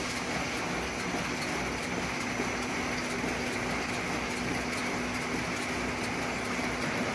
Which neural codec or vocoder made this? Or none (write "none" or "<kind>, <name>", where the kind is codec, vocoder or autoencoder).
none